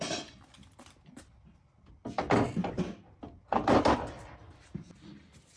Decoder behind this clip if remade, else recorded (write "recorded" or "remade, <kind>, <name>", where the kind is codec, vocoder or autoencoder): recorded